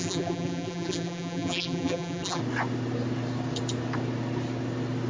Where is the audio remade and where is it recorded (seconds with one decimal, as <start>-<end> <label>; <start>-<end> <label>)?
0.0-2.4 remade; 2.4-5.1 recorded